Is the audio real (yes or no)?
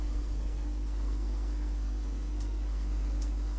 no